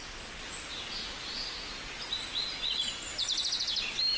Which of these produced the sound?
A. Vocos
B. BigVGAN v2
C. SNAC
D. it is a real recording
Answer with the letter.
D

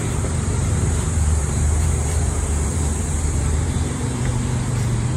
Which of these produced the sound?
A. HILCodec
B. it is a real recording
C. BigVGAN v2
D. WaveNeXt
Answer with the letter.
C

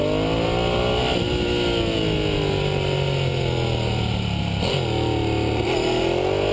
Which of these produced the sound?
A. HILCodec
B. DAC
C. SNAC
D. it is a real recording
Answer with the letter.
D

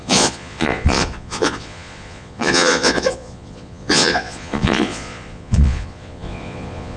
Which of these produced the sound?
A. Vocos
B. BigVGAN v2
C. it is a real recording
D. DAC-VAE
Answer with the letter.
A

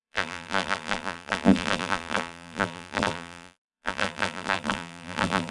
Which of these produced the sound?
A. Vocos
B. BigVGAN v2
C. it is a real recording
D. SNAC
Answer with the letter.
B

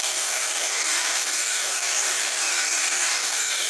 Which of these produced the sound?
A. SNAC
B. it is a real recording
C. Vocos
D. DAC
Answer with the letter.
D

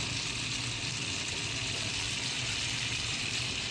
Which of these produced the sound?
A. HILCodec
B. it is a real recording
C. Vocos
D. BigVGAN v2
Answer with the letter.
D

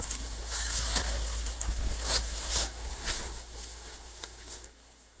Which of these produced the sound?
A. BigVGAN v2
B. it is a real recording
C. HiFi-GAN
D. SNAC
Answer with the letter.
D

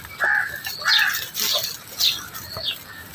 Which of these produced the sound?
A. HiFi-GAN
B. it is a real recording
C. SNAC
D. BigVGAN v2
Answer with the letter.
B